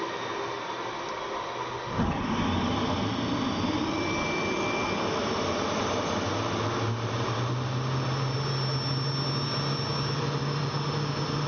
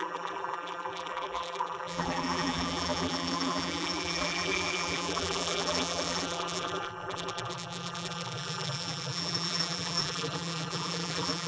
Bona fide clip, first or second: first